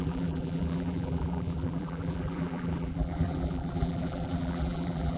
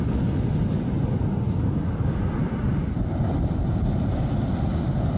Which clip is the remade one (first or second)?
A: first